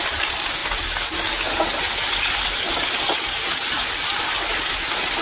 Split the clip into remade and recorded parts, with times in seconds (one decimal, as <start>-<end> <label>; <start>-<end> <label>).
0.0-5.2 recorded